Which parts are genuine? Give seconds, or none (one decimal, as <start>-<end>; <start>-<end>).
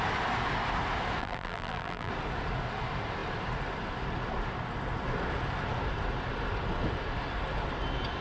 0.0-1.2; 2.1-8.2